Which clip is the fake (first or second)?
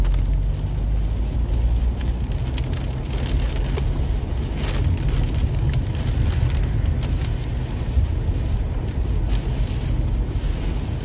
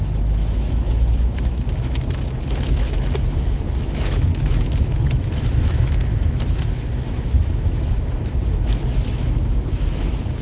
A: second